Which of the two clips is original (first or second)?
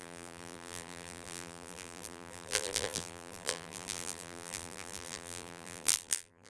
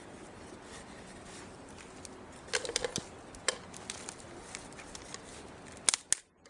second